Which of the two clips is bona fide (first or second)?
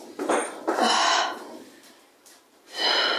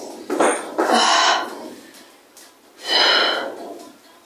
second